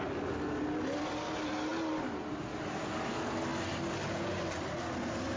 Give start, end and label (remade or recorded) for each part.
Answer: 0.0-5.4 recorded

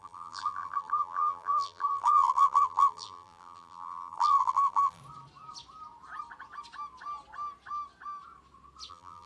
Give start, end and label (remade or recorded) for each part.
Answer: 0.0-5.0 remade; 5.0-8.9 recorded; 8.9-9.3 remade

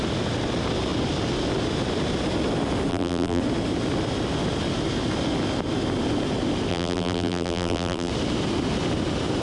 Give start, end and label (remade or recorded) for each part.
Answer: 0.0-2.9 recorded; 2.9-3.4 remade; 3.4-6.7 recorded; 6.7-8.1 remade; 8.1-9.4 recorded

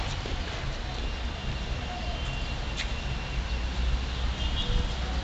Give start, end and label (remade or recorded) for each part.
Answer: 0.0-5.2 recorded

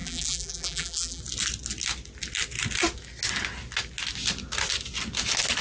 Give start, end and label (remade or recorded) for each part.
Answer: 0.0-1.2 remade; 1.2-5.6 recorded

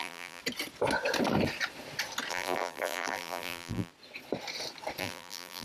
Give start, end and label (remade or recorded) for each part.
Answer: 0.0-0.4 remade; 0.4-2.3 recorded; 2.3-3.9 remade; 3.9-5.0 recorded; 5.0-5.6 remade

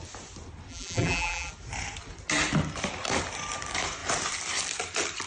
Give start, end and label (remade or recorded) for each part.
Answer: 0.0-0.7 recorded; 0.7-1.5 remade; 1.5-5.3 recorded

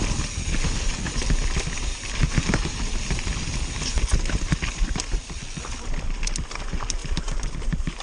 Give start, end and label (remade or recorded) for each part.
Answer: 0.0-1.0 recorded; 1.0-5.4 remade; 5.4-8.0 recorded